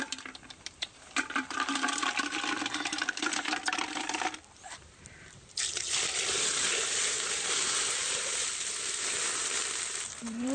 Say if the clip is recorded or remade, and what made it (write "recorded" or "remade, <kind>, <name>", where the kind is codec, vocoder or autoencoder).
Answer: remade, vocoder, BigVGAN v2